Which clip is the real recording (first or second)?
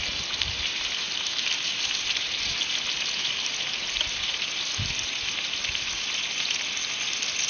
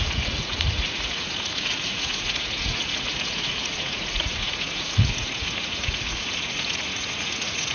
first